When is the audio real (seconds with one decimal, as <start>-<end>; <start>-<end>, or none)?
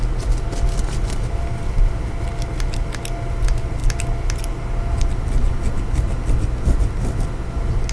0.0-7.9